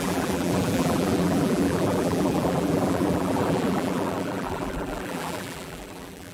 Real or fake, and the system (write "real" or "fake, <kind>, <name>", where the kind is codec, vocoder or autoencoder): fake, vocoder, BigVGAN v2